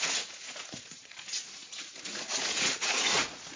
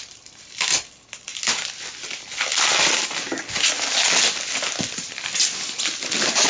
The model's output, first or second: first